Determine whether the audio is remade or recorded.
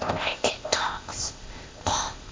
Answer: remade